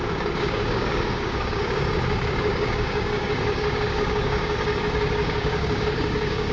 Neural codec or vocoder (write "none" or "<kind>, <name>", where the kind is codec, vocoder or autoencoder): codec, DAC